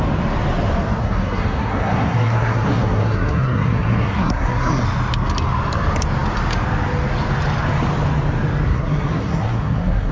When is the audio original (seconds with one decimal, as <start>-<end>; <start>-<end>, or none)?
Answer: 0.0-1.0; 4.7-8.7